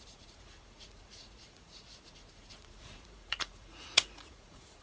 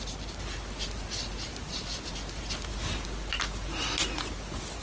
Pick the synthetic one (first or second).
first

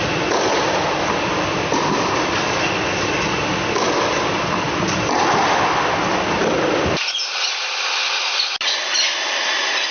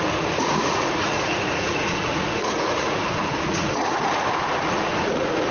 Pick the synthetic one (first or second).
second